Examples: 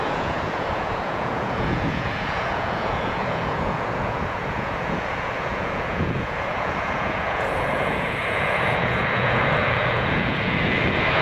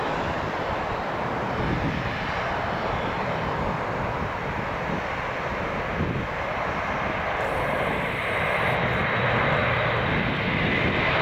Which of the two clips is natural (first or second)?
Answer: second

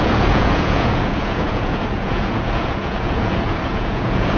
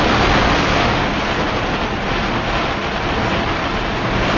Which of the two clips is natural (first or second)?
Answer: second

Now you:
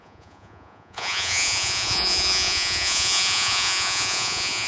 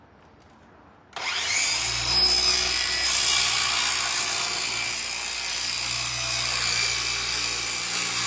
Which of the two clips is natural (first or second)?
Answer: second